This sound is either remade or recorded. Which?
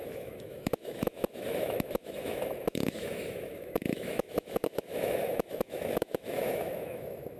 remade